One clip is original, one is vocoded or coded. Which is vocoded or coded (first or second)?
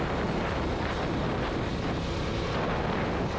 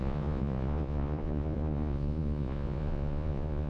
second